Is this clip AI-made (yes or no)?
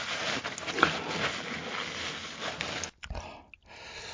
no